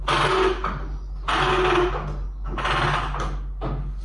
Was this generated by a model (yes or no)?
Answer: no